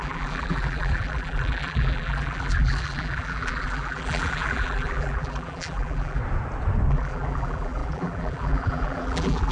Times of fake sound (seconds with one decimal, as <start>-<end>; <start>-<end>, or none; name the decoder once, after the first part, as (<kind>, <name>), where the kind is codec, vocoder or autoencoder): 0.0-6.2 (vocoder, BigVGAN v2); 6.9-9.5